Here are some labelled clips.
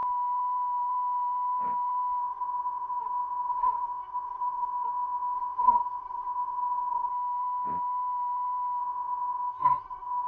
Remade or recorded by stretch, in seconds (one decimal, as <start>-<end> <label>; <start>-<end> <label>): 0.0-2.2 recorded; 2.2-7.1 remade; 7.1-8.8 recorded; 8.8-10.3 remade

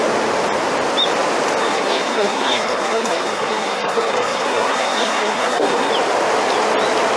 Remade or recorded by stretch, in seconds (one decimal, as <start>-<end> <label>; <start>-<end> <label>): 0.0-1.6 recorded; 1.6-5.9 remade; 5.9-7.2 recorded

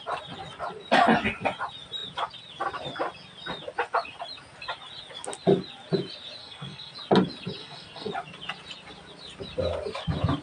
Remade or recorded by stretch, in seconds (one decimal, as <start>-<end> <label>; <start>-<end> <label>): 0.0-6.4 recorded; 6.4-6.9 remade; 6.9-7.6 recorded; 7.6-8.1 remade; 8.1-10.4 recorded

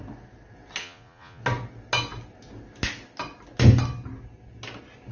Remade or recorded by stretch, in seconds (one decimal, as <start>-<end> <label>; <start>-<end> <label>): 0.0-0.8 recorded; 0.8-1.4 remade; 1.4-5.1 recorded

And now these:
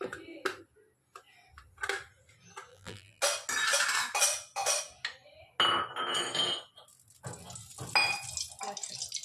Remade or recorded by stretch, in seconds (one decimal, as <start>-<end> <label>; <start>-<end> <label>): 0.0-2.7 recorded; 2.7-3.2 remade; 3.2-9.2 recorded

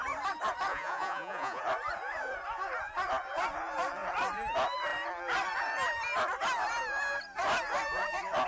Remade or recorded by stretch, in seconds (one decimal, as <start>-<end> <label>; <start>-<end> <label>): 0.0-0.7 recorded; 0.7-1.6 remade; 1.6-8.5 recorded

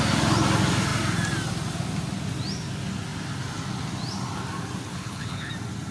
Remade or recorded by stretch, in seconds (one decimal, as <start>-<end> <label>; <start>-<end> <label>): 0.0-4.9 recorded; 4.9-5.5 remade; 5.5-5.9 recorded

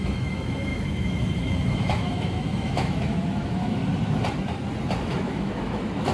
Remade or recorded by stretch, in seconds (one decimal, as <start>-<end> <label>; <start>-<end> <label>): 0.0-3.8 remade; 3.8-5.0 recorded; 5.0-6.1 remade